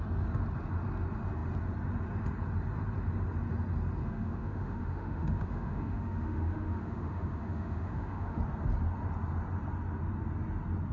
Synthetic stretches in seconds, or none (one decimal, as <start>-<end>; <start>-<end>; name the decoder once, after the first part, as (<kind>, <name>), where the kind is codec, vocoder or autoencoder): 4.0-8.4 (autoencoder, DAC-VAE)